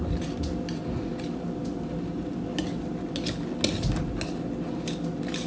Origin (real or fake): real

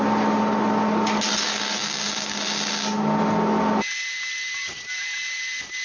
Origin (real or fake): real